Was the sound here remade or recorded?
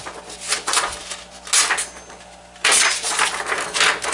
recorded